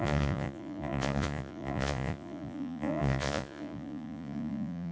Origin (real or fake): fake